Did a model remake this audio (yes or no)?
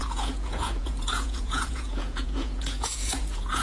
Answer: yes